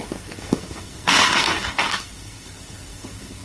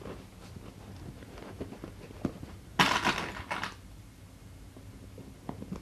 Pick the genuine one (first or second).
second